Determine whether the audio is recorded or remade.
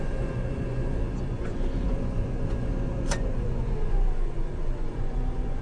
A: remade